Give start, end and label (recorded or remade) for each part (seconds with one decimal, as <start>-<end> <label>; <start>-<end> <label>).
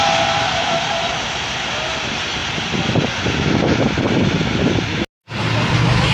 0.0-6.1 recorded